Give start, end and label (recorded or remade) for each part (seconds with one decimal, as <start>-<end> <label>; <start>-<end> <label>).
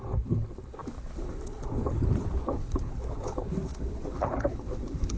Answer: 0.0-5.2 remade